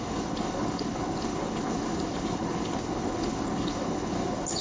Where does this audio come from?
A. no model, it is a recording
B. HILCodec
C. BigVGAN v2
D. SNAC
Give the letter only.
B